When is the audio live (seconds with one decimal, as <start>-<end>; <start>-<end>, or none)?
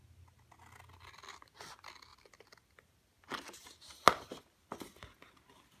0.0-2.1; 3.6-5.8